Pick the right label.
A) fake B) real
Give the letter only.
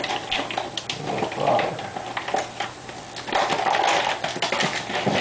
A